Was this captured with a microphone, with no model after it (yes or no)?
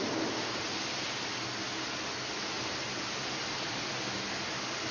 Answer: yes